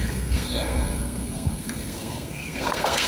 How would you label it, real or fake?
fake